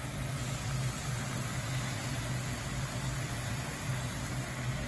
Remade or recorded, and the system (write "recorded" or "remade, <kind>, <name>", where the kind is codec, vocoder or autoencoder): recorded